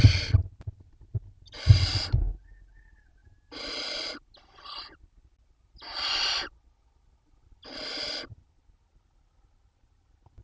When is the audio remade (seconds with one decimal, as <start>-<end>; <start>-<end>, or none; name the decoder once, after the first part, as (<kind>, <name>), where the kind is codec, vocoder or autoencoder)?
none